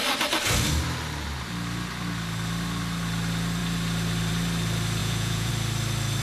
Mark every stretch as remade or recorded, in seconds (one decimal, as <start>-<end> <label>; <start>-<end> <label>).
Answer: 0.0-5.0 recorded; 5.0-5.5 remade; 5.5-6.2 recorded